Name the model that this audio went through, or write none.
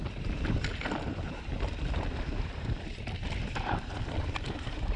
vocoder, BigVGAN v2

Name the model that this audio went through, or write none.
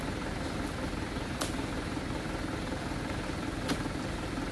none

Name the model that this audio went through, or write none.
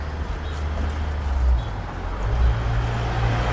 none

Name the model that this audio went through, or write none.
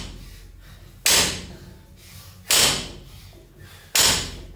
none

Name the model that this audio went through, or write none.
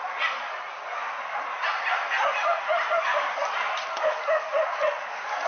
none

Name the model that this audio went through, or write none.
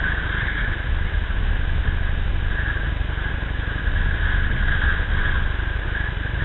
none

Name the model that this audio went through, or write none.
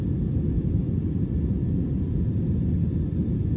none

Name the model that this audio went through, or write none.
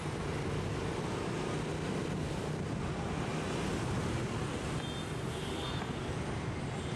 none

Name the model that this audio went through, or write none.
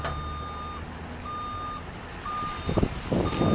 none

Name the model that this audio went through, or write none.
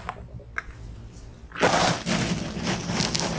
none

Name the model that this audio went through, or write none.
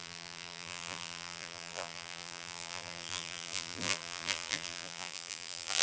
vocoder, BigVGAN v2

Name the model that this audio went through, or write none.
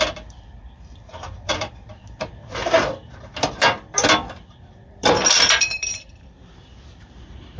vocoder, BigVGAN v2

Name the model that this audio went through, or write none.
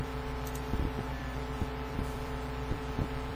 vocoder, BigVGAN v2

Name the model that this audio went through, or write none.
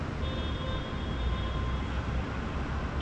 none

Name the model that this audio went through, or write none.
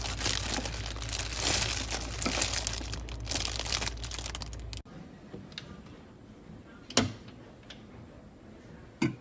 none